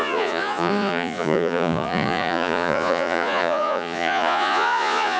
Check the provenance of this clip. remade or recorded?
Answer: remade